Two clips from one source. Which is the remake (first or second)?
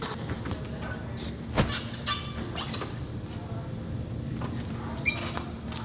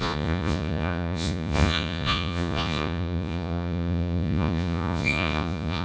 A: second